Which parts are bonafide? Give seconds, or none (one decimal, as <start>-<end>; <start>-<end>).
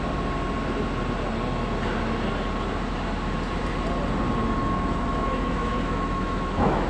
0.0-4.6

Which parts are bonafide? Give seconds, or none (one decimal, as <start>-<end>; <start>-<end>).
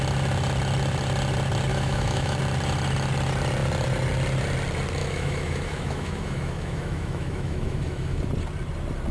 0.0-1.7; 2.4-5.0; 8.2-9.1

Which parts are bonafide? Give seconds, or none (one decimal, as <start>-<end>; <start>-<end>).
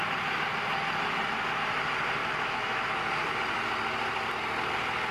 0.0-2.2; 2.8-5.1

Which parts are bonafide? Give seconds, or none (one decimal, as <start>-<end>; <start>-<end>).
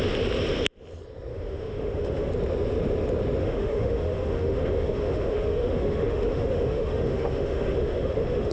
0.0-1.3; 2.3-3.4